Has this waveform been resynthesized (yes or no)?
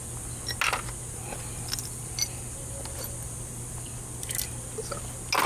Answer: no